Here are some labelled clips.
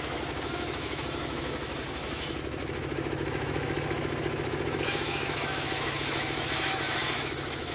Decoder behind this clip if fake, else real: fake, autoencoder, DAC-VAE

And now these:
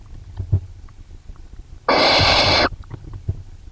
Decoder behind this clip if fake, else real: real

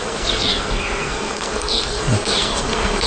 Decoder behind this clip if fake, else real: fake, codec, SNAC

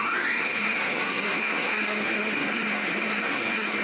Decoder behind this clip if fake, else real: fake, codec, SNAC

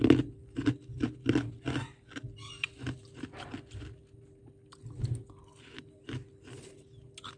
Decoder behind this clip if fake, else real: real